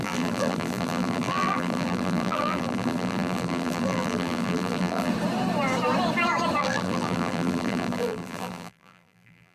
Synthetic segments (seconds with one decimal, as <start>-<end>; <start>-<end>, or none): 0.0-5.1; 6.6-9.5